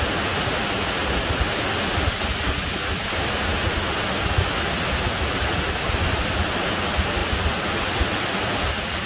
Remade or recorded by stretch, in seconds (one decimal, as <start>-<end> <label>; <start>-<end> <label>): 0.0-9.1 recorded